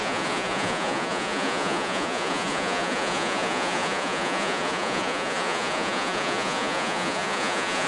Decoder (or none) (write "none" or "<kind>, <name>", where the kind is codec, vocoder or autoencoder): vocoder, Vocos